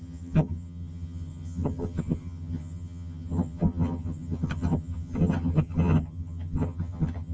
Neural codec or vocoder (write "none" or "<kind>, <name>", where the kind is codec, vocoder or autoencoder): vocoder, HiFi-GAN